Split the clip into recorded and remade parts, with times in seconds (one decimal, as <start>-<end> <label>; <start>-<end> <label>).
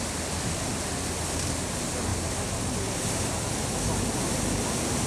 0.0-5.1 recorded